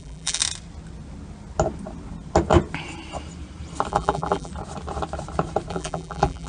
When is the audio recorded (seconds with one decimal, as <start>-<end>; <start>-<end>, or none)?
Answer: 0.4-3.9; 4.5-5.7